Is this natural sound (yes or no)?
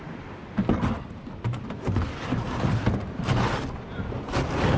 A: yes